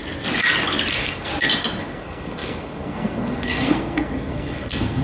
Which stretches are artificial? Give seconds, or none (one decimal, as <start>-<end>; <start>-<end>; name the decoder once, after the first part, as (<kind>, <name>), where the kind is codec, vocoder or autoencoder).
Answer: 0.9-1.3 (codec, SNAC); 1.8-5.0